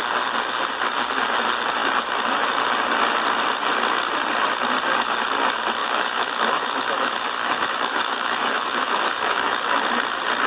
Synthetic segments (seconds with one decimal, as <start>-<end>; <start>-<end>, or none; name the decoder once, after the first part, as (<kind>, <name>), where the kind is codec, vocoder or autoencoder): 5.8-9.8 (autoencoder, DAC-VAE)